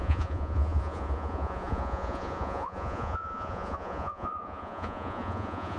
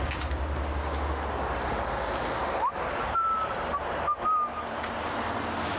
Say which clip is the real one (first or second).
second